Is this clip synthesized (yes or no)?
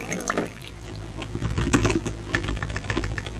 yes